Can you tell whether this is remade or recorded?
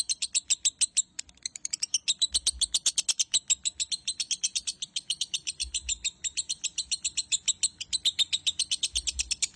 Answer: recorded